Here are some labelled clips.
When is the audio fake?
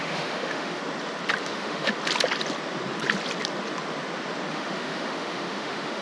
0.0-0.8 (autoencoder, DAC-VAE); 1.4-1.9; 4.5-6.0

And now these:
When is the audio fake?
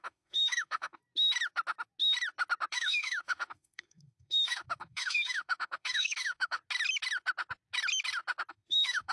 0.0-1.0 (autoencoder, DAC-VAE); 2.7-6.6; 8.5-9.1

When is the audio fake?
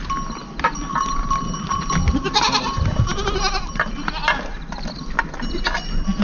none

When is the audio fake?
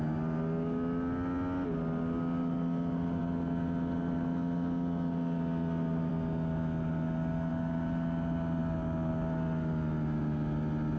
none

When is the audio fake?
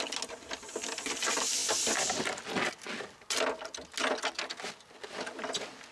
none